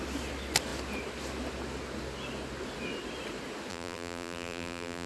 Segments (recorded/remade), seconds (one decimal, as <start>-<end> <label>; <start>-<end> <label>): 0.0-3.7 recorded; 3.7-5.1 remade